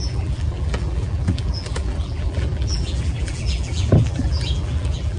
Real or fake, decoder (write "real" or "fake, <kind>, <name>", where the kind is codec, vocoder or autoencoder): fake, vocoder, BigVGAN v2